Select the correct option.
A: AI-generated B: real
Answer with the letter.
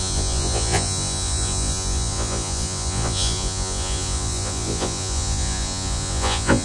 A